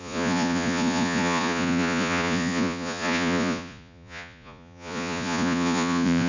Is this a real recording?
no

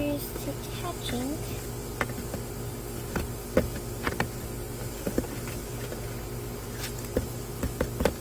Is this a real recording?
yes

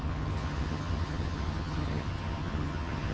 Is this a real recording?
no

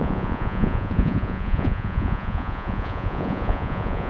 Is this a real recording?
no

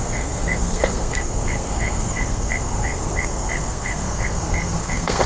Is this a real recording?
no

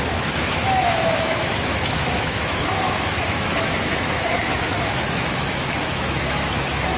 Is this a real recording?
no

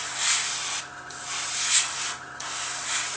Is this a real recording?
yes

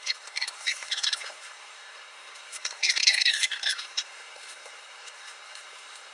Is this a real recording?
no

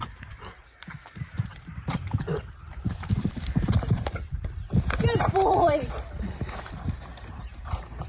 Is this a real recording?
no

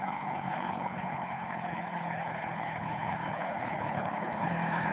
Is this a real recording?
no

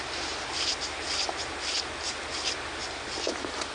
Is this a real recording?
yes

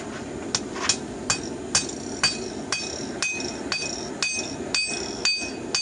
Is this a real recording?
yes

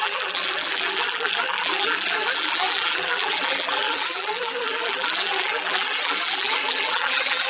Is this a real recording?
no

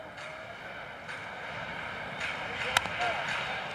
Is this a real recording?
yes